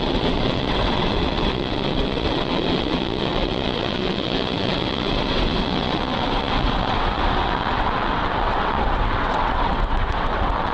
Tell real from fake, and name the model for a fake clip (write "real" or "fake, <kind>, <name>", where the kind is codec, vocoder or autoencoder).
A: fake, vocoder, WaveNeXt